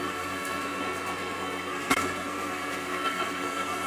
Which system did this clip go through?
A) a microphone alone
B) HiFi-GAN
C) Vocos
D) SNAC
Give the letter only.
D